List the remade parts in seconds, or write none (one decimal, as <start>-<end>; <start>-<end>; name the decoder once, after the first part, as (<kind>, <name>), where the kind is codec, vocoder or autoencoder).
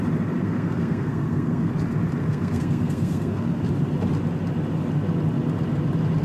0.4-1.7 (codec, SNAC); 2.2-3.6